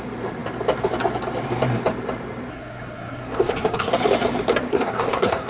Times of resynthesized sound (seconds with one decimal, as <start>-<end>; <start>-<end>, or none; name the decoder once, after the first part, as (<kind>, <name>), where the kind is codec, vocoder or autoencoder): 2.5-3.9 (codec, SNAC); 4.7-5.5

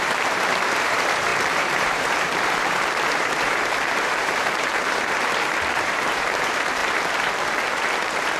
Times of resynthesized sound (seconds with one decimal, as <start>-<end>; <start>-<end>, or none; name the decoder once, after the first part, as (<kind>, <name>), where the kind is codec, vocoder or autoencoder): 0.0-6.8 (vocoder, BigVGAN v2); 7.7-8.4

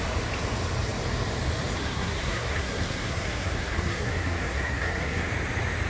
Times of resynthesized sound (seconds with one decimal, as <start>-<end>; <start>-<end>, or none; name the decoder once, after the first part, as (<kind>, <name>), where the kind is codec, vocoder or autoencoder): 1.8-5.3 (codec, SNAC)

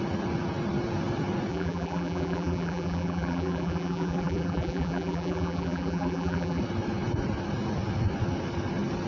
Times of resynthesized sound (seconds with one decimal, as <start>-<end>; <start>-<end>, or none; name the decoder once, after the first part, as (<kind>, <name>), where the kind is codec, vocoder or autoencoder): 1.5-6.6 (vocoder, BigVGAN v2)

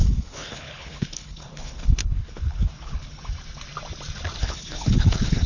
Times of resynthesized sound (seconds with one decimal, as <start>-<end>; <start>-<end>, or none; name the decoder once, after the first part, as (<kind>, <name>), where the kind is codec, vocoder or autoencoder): 0.0-3.2 (codec, HILCodec); 4.4-5.5

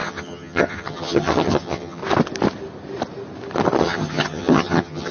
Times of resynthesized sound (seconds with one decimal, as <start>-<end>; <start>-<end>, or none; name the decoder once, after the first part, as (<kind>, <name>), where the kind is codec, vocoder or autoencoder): 0.0-2.0 (vocoder, HiFi-GAN); 3.8-5.1

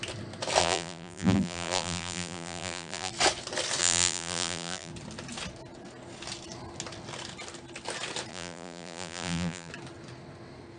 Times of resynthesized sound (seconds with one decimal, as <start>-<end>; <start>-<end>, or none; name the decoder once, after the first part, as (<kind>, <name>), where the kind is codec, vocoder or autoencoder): 0.6-3.1 (vocoder, BigVGAN v2); 3.8-4.9; 8.3-9.7